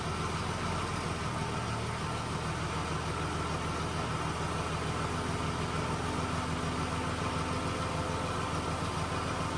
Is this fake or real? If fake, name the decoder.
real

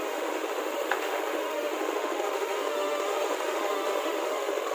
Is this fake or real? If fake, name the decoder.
fake, autoencoder, DAC-VAE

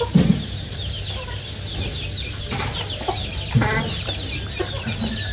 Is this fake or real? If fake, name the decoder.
real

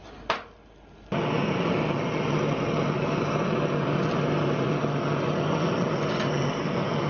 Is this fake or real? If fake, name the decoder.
real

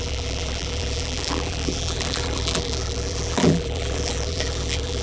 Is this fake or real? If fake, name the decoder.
fake, vocoder, BigVGAN v2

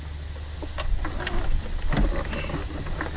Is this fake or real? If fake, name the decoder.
real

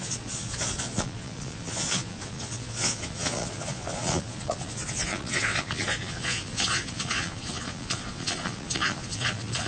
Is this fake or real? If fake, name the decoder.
fake, vocoder, Vocos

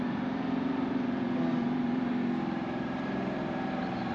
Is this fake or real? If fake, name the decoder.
fake, vocoder, BigVGAN v2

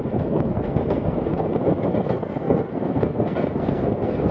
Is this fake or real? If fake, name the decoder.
fake, codec, SNAC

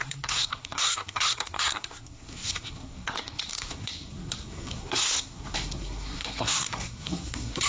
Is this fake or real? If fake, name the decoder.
fake, codec, SNAC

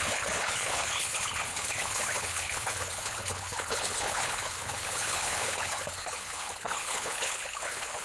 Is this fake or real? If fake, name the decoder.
fake, codec, HILCodec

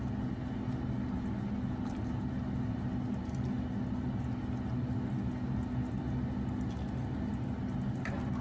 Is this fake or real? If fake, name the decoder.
real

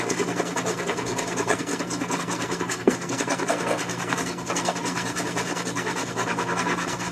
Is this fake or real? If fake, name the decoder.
fake, codec, SNAC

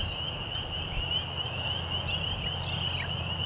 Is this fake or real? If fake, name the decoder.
real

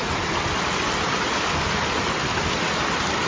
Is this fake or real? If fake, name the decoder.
real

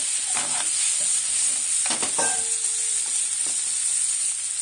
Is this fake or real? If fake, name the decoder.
real